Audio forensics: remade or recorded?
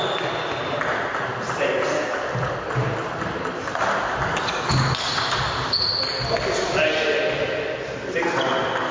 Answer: recorded